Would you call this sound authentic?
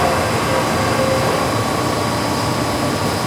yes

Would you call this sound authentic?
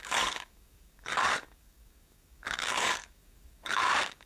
no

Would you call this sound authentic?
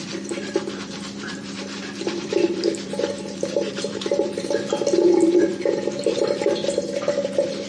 no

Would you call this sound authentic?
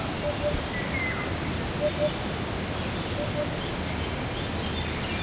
yes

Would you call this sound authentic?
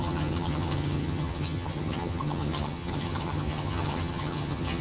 no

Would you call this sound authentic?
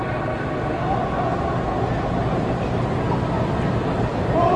yes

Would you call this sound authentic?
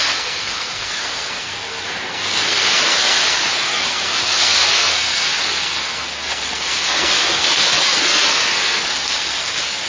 no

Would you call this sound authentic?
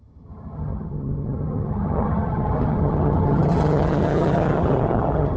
no